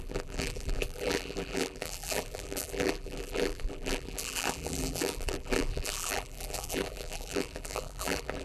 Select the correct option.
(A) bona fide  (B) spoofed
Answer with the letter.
B